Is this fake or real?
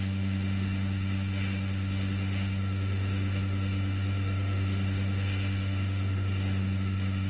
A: fake